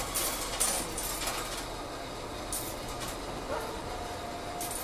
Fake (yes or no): no